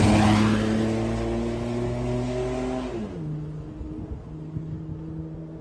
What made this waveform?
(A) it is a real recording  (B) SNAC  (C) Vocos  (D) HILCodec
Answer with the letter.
A